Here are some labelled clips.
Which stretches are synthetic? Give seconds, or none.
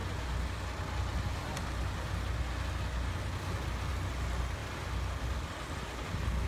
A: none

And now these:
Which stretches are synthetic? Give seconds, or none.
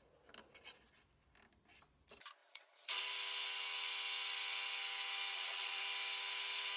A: 2.4-3.0 (vocoder, Vocos); 5.3-5.8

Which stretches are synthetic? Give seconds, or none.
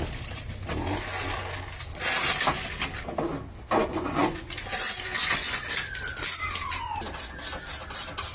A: 3.8-5.6 (vocoder, Vocos)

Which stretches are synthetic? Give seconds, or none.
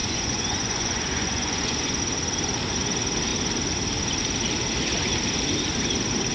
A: 0.0-2.0 (vocoder, Vocos)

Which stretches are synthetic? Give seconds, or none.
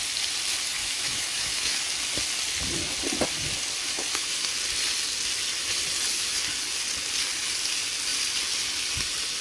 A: 0.8-1.8 (autoencoder, DAC-VAE); 3.9-4.5